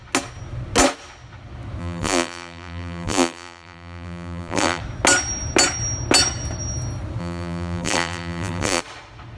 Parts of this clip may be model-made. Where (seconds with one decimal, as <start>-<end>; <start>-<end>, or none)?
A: 1.8-4.8; 7.2-8.8